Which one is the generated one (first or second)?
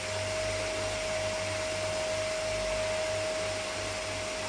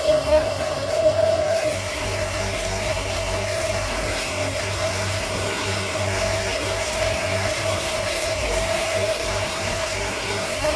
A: second